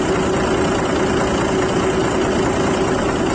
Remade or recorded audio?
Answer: recorded